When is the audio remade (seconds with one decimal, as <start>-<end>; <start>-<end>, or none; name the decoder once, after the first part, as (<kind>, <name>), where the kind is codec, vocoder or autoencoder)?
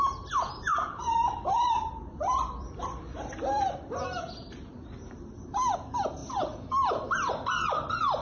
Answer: 0.7-5.6 (vocoder, BigVGAN v2); 6.2-7.3